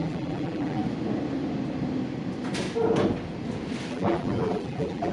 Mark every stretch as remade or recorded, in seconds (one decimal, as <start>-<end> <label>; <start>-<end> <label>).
0.0-0.8 remade; 0.8-3.9 recorded; 3.9-5.1 remade